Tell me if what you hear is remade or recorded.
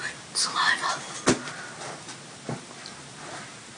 recorded